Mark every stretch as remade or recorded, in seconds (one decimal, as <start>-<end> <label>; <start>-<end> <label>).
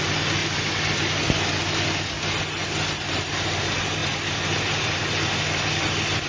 0.0-6.3 recorded